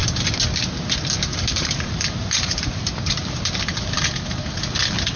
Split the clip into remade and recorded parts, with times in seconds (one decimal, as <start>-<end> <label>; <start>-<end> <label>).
0.0-1.3 recorded; 1.3-4.4 remade; 4.4-5.2 recorded